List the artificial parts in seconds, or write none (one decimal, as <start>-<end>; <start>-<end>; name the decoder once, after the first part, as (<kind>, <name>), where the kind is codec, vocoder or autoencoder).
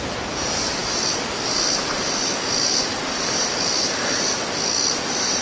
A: none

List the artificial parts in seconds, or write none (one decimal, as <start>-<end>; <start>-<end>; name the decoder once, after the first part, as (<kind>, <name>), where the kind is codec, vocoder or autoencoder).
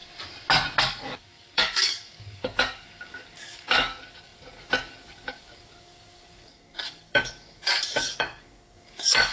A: 0.8-9.3 (codec, DAC)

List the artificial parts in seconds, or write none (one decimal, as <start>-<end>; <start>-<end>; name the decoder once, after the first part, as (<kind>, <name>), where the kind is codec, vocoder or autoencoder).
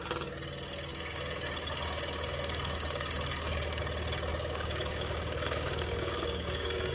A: 0.9-3.8 (codec, DAC); 4.3-6.9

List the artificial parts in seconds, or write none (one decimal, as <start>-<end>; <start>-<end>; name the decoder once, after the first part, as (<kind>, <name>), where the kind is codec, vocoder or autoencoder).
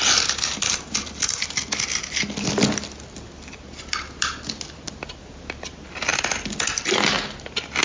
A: none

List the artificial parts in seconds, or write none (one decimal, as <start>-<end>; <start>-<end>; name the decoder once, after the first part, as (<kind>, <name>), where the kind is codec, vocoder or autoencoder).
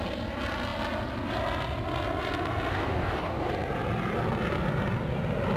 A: 2.7-3.5 (codec, DAC)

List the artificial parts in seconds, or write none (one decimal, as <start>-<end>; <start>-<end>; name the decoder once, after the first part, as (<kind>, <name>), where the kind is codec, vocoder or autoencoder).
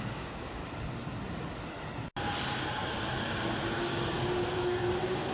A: 0.0-0.6 (codec, DAC); 3.7-5.3